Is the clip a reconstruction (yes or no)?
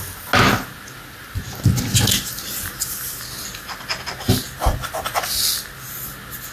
no